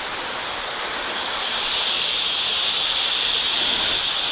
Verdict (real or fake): real